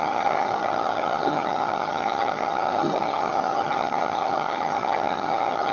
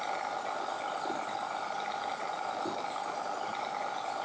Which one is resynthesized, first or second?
first